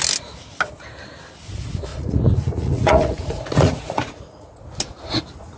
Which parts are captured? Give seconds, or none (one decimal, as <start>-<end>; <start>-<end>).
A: 0.0-1.9; 4.6-5.6